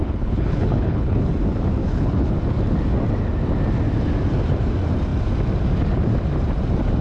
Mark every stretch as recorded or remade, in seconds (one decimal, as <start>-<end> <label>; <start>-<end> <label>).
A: 0.0-1.3 remade; 1.3-1.8 recorded; 1.8-2.4 remade; 2.4-7.0 recorded